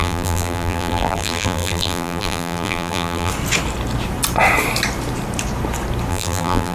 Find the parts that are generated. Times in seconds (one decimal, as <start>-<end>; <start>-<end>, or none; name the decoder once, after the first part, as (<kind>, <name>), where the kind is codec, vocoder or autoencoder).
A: 0.0-3.3 (vocoder, BigVGAN v2); 6.1-6.7